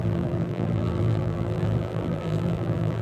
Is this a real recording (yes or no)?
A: no